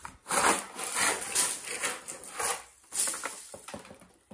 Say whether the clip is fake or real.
real